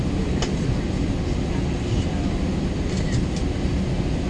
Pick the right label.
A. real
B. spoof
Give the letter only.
A